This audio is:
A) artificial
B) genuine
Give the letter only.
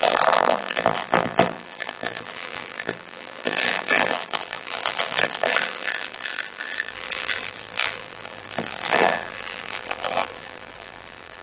A